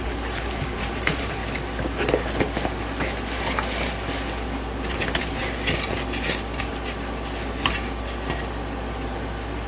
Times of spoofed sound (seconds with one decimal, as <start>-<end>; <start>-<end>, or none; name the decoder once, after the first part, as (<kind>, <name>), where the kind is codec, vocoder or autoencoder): 0.0-1.4 (vocoder, BigVGAN v2); 4.9-5.4